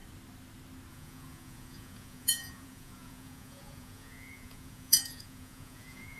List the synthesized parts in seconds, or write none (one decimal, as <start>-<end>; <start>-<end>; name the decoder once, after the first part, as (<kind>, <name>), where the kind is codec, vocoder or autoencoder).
0.9-6.2 (vocoder, Vocos)